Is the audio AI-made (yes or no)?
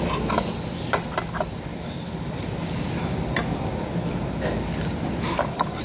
no